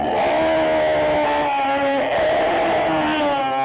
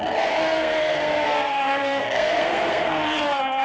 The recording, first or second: first